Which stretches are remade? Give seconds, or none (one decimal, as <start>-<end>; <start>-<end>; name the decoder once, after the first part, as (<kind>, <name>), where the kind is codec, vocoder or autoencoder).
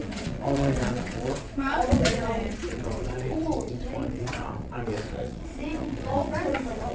0.0-6.9 (vocoder, Vocos)